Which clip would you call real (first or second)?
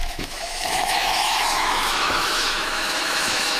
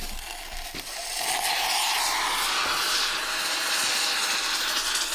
second